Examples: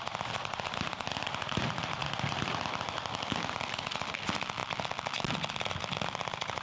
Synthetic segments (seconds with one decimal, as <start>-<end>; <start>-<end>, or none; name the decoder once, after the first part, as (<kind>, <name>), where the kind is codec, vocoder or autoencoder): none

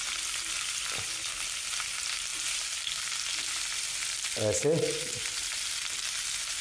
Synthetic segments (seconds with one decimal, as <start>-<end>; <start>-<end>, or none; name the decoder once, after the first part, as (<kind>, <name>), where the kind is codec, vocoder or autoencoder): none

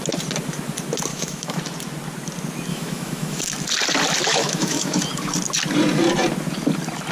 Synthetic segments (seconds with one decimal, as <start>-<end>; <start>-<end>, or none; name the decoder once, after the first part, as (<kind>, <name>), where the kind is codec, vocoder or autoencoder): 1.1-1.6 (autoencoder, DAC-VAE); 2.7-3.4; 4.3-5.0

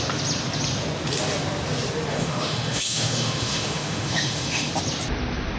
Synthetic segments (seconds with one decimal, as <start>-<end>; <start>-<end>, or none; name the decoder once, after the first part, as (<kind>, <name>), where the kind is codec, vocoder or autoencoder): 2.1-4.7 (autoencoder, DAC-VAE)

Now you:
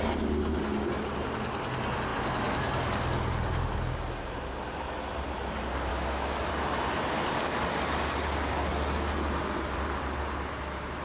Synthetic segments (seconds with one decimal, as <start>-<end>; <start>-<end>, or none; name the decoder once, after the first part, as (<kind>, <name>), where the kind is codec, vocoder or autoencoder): 5.9-6.5 (autoencoder, DAC-VAE)